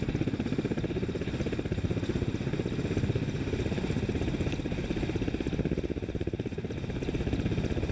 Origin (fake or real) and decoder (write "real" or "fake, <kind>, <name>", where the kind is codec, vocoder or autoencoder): real